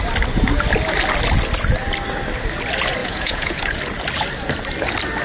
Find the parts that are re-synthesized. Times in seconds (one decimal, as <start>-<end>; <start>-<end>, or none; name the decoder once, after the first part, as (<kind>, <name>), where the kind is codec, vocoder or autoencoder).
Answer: 3.0-3.8 (vocoder, Vocos)